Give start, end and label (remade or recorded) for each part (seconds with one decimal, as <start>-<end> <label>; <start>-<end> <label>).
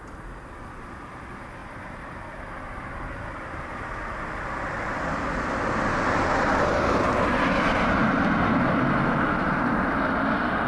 0.0-10.7 recorded